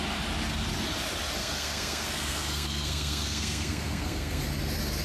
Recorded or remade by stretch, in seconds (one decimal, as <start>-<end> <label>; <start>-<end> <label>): 0.0-1.4 recorded; 1.4-4.4 remade; 4.4-5.0 recorded